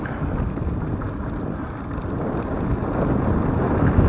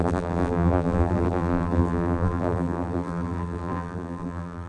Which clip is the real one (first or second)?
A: first